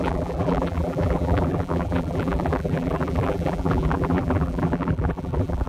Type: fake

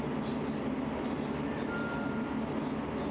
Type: real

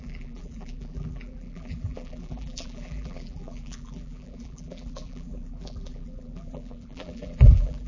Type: fake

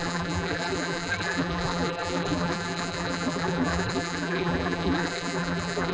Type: fake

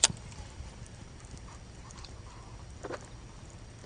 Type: fake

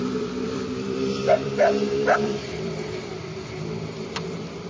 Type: fake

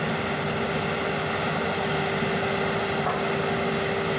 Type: real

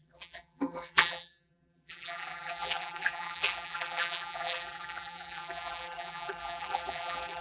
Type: fake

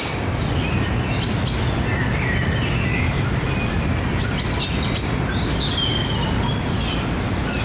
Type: real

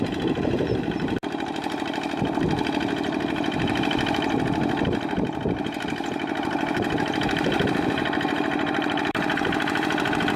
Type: fake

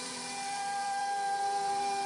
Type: fake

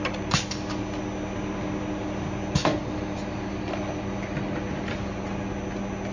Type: real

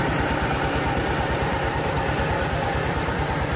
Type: fake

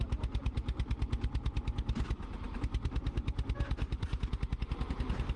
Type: fake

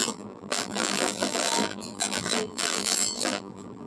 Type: fake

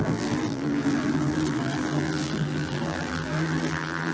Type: fake